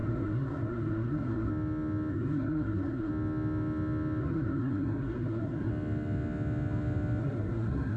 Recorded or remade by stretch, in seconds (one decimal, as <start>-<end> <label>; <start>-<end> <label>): 0.0-1.5 remade; 1.5-2.1 recorded; 2.1-3.1 remade; 3.1-4.2 recorded; 4.2-5.7 remade; 5.7-7.2 recorded; 7.2-8.0 remade